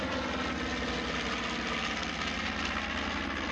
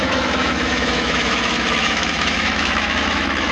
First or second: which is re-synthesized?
second